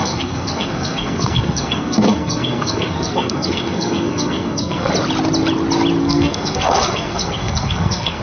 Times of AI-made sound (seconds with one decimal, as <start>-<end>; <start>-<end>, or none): 0.0-4.9; 6.0-8.2